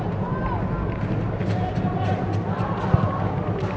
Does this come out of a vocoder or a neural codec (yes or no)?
no